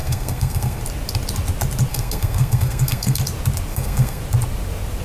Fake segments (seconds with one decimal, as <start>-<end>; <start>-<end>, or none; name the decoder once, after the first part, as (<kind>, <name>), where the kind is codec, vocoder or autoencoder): 0.0-0.8 (codec, SNAC); 1.9-3.2; 3.7-4.2